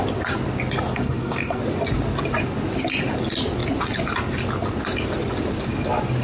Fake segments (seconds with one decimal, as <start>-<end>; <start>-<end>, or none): 0.9-1.6